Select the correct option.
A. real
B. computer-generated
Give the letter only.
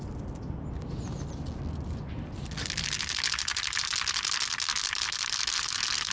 A